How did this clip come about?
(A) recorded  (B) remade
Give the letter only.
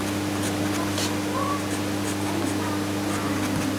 A